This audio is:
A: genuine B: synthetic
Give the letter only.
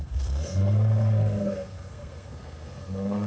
B